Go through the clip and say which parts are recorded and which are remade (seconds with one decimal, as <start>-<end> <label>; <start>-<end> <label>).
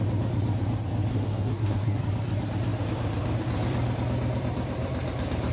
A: 0.0-1.1 recorded; 1.1-2.0 remade; 2.0-5.5 recorded